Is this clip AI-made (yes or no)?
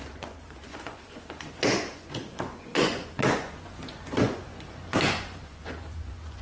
yes